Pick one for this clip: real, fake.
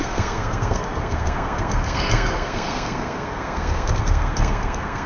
fake